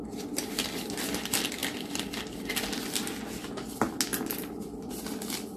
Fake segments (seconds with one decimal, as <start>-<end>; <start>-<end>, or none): 4.1-4.9